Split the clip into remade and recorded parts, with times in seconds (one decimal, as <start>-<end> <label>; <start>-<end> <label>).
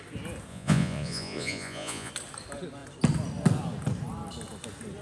0.0-0.5 recorded; 0.5-2.1 remade; 2.1-5.0 recorded